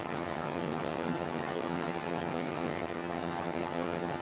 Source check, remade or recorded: remade